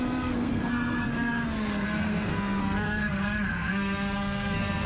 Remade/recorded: remade